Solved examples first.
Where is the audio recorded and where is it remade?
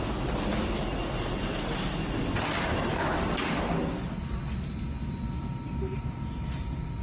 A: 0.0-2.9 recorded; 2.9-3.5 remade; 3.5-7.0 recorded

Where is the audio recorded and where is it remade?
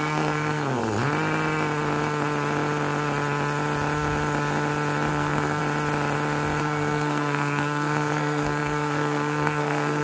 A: 0.0-0.8 remade; 0.8-5.1 recorded; 5.1-5.6 remade; 5.6-6.6 recorded; 6.6-10.0 remade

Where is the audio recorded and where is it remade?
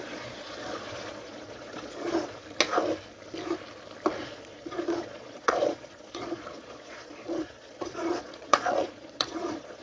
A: 0.0-2.4 remade; 2.4-4.2 recorded; 4.2-9.8 remade